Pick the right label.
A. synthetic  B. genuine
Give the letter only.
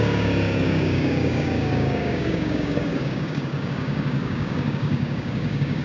A